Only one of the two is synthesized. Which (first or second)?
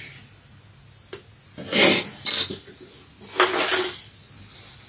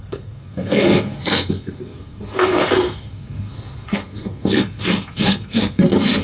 second